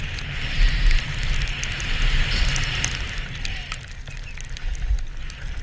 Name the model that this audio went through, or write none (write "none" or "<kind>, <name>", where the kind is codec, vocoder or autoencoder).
none